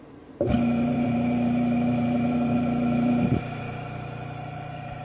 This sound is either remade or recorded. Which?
remade